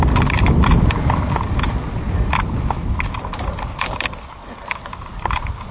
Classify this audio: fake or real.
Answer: real